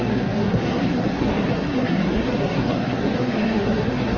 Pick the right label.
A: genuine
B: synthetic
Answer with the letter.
B